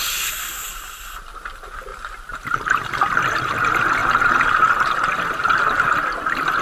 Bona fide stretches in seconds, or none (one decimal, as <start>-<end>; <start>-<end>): 0.0-0.6; 1.2-1.9; 2.6-4.0; 4.5-5.4; 5.9-6.6